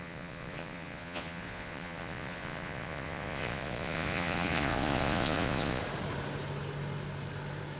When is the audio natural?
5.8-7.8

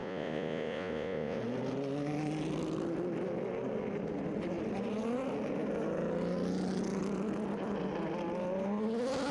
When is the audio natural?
1.4-9.3

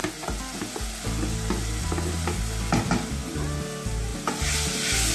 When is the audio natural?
0.0-5.1

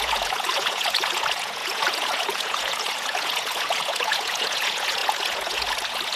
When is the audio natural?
none

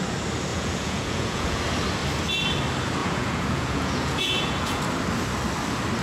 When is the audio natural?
0.0-0.5; 1.6-3.0; 4.8-6.0